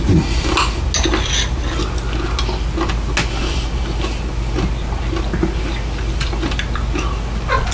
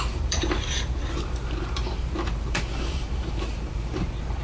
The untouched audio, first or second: first